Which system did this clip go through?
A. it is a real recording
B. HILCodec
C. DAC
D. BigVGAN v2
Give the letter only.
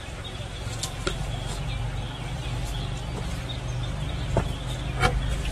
A